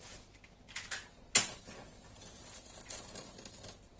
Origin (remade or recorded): recorded